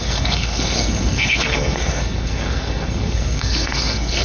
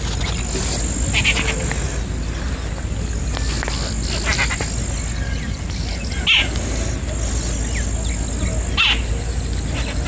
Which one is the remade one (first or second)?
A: first